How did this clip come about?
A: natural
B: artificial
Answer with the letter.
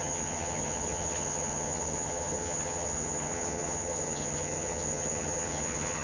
B